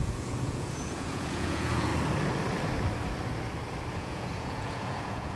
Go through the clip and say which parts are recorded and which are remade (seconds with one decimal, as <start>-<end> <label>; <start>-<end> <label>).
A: 0.0-1.9 remade; 1.9-3.9 recorded; 3.9-5.4 remade